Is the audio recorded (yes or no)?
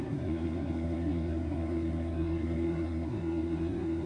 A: no